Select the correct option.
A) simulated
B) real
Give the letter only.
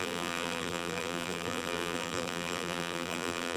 A